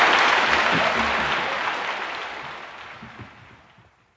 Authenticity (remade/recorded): recorded